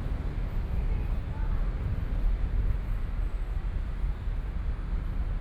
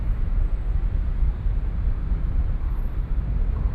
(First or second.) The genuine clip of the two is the first